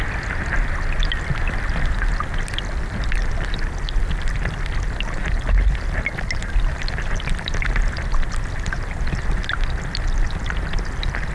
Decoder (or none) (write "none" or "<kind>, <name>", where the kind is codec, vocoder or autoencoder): none